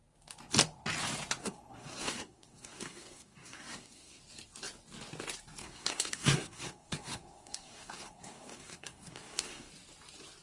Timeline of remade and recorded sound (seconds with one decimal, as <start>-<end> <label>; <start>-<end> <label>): 0.0-1.4 recorded; 1.4-4.2 remade; 4.2-5.6 recorded; 5.6-9.7 remade; 9.7-10.4 recorded

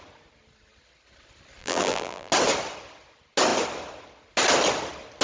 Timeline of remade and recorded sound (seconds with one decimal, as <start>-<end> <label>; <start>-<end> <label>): 0.0-1.6 recorded; 1.6-2.3 remade; 2.3-5.2 recorded

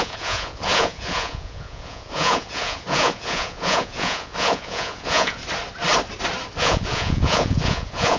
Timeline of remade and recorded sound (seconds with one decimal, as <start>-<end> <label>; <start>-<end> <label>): 0.0-5.4 remade; 5.4-6.6 recorded; 6.6-8.2 remade

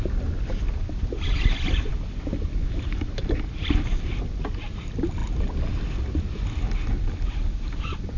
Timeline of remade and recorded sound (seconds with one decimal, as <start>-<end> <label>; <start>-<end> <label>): 0.0-8.2 recorded

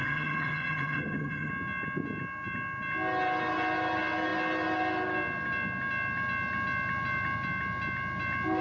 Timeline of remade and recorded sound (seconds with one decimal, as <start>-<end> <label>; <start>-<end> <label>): 0.0-1.5 remade; 1.5-8.6 recorded